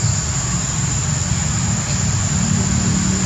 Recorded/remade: recorded